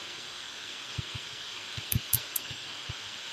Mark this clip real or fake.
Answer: fake